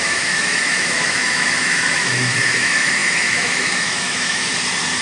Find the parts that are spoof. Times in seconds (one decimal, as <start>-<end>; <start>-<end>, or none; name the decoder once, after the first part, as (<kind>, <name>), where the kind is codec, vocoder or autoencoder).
0.0-4.5 (autoencoder, DAC-VAE)